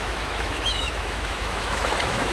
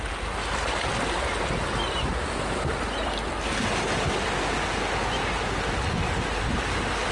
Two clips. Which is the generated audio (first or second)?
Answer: first